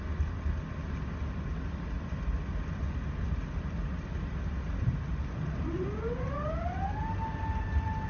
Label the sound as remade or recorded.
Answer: recorded